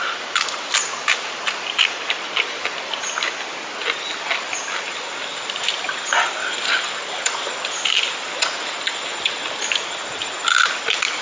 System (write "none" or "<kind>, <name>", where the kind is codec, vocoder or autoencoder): none